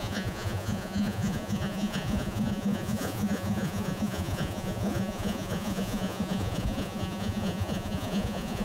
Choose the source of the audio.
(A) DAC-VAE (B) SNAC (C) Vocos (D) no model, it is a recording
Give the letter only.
C